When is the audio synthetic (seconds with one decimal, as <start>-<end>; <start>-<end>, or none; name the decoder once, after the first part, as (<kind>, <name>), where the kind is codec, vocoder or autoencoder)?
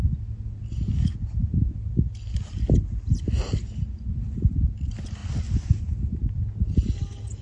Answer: none